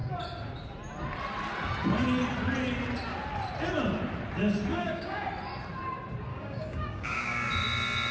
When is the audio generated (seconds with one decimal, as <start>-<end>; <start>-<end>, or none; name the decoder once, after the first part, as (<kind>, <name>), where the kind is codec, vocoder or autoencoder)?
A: 4.7-5.3 (codec, DAC); 6.3-7.5